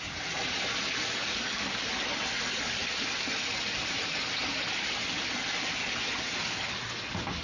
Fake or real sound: real